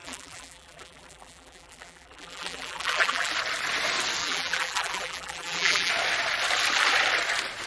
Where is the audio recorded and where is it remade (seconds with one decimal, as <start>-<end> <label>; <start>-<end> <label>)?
0.0-3.3 remade; 3.3-4.2 recorded; 4.2-5.9 remade; 5.9-7.7 recorded